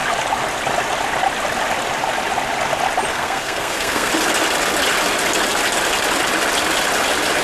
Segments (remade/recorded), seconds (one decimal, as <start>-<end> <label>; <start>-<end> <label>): 0.0-3.1 recorded; 3.1-4.1 remade; 4.1-7.4 recorded

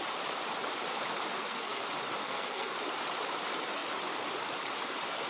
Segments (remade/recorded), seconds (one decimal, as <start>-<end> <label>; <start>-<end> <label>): 0.0-1.3 recorded; 1.3-1.8 remade; 1.8-2.2 recorded; 2.2-2.8 remade; 2.8-5.3 recorded

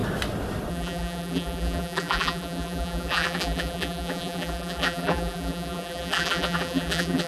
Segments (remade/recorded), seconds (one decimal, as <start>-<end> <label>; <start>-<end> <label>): 0.0-0.7 recorded; 0.7-7.3 remade

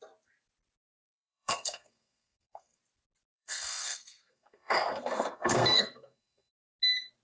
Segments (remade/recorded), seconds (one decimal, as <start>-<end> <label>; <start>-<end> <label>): 0.0-1.0 recorded; 1.0-2.8 remade; 2.8-3.3 recorded; 3.3-6.5 remade; 6.5-7.2 recorded

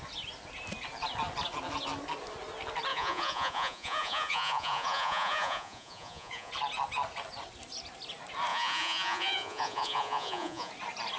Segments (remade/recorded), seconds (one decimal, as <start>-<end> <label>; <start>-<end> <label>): 0.0-2.9 recorded; 2.9-6.5 remade; 6.5-8.5 recorded; 8.5-10.7 remade; 10.7-11.2 recorded

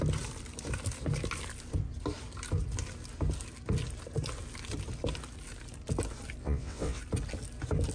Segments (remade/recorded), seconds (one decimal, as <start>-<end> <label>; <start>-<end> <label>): 0.0-6.4 recorded; 6.4-7.0 remade; 7.0-7.9 recorded